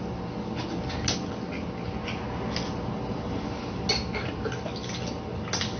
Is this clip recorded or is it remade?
recorded